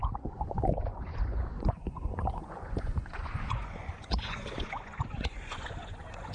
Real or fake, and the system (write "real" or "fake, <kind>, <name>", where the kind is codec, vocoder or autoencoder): fake, vocoder, Vocos